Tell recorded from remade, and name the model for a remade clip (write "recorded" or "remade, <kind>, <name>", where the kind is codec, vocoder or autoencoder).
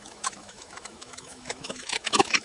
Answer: remade, autoencoder, DAC-VAE